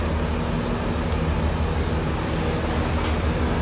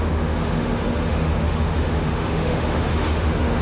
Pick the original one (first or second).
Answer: first